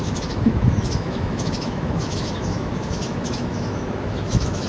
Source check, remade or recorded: remade